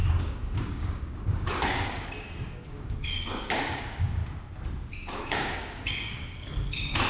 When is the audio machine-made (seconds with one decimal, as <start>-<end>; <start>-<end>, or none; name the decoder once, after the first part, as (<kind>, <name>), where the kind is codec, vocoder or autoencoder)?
0.0-4.2 (codec, DAC); 4.9-7.1

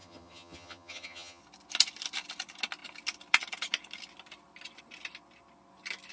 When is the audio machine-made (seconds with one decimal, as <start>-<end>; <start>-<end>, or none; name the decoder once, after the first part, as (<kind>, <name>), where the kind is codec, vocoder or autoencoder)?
0.0-1.4 (vocoder, HiFi-GAN)

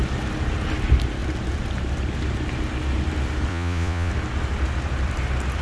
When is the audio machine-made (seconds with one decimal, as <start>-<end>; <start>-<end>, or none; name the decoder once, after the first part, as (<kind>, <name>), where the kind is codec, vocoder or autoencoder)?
3.5-4.1 (vocoder, Vocos)

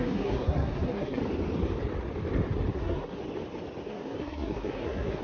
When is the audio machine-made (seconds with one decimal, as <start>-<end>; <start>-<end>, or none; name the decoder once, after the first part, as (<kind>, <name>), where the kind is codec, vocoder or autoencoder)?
0.0-1.2 (codec, SNAC); 2.7-3.2; 3.9-5.2

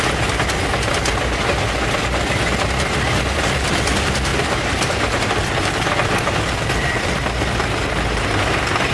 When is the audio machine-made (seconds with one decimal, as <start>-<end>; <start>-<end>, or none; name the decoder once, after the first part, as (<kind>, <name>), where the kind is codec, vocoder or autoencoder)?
4.3-4.9 (vocoder, BigVGAN v2)

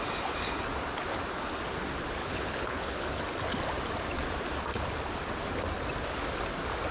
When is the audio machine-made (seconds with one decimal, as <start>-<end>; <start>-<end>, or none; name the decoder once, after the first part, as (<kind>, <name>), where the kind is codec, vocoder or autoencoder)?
2.2-3.3 (codec, HILCodec)

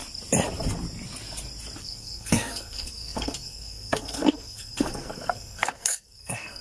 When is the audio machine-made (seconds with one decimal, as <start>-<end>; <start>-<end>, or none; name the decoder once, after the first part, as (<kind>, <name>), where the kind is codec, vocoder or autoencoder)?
1.8-6.6 (codec, SNAC)

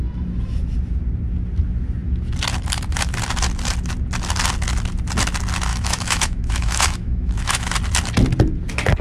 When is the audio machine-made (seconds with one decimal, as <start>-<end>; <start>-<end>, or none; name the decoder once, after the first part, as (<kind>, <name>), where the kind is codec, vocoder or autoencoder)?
5.7-7.7 (autoencoder, DAC-VAE)